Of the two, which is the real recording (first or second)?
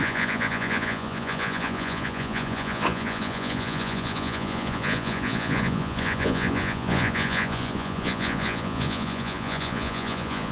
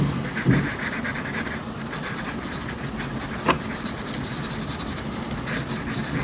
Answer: second